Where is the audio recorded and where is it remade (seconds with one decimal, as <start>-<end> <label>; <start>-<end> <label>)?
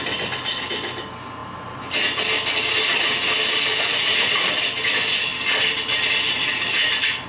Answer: 0.0-3.7 recorded; 3.7-4.5 remade; 4.5-7.3 recorded